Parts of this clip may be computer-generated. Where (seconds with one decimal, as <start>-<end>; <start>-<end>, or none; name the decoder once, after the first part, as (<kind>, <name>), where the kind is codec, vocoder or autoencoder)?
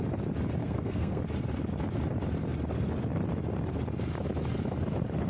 0.6-1.2 (codec, SNAC)